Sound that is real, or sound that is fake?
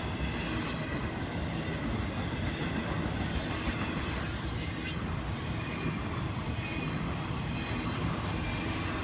real